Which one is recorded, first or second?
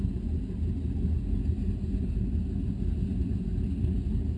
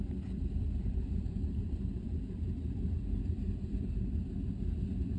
first